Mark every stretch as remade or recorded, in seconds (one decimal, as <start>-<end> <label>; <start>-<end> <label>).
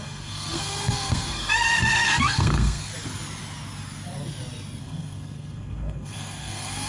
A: 0.0-2.9 remade; 2.9-4.8 recorded; 4.8-6.9 remade